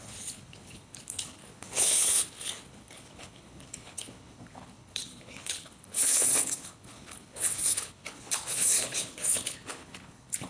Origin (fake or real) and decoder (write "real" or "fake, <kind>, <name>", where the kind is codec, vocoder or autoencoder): fake, codec, HILCodec